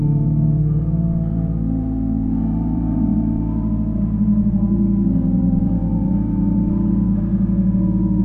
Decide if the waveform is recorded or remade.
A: remade